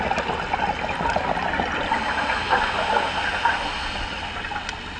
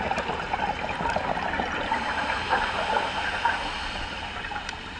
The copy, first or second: second